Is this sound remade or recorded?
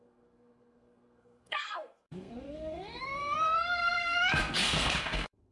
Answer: remade